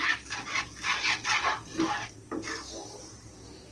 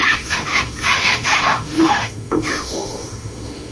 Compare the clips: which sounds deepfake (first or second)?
second